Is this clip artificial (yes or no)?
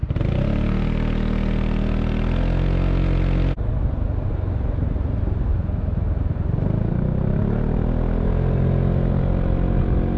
no